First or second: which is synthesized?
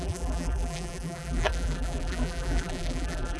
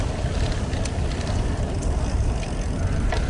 first